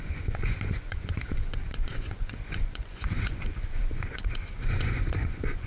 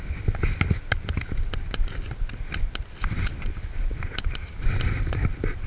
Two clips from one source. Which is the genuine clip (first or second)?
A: second